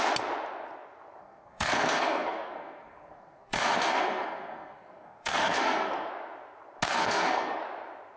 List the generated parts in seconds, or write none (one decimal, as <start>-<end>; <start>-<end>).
1.2-6.1; 6.9-7.6